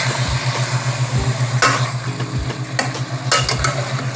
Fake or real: real